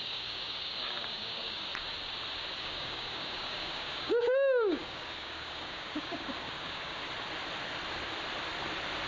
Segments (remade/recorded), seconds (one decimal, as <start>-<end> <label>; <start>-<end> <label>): 0.0-1.7 remade; 1.7-2.6 recorded; 2.6-7.0 remade; 7.0-9.1 recorded